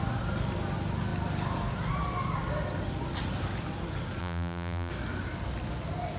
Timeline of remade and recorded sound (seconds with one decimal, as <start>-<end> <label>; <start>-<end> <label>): 0.0-4.2 recorded; 4.2-4.9 remade; 4.9-6.2 recorded